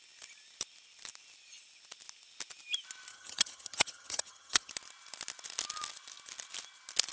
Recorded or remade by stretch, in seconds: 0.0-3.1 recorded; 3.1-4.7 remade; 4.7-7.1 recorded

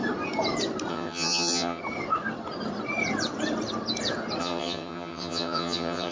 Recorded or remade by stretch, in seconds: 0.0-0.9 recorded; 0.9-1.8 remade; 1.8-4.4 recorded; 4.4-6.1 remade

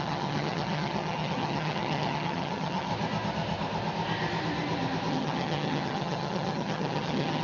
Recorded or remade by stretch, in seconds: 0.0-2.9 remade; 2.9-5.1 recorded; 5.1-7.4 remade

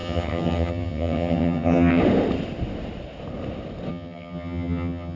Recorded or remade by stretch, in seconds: 0.0-2.0 remade; 2.0-3.9 recorded; 3.9-5.2 remade